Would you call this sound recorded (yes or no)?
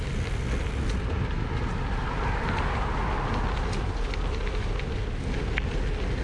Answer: yes